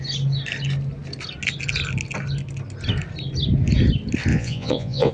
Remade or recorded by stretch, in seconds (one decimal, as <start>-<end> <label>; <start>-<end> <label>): 0.0-4.3 recorded; 4.3-5.1 remade